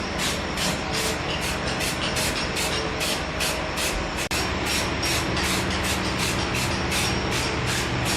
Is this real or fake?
fake